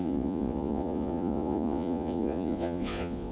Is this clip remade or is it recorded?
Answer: remade